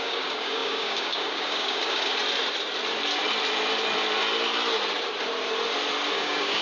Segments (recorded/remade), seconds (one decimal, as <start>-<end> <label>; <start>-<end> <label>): 0.0-2.1 remade; 2.1-6.1 recorded; 6.1-6.6 remade